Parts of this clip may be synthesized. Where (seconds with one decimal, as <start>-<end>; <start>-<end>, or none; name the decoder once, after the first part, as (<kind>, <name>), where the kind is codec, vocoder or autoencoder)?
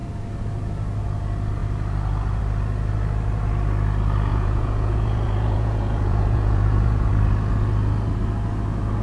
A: 4.3-7.1 (vocoder, Vocos)